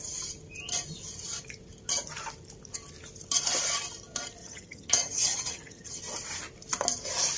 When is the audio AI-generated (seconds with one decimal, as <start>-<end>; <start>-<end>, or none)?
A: 4.4-6.0